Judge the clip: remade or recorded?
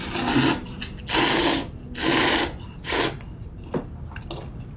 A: recorded